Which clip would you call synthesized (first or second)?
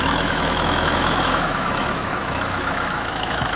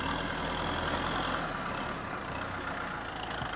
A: first